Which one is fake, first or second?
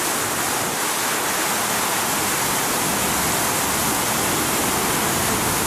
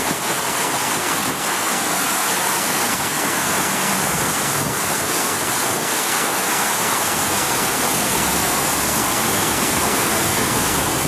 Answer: second